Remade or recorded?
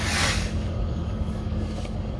remade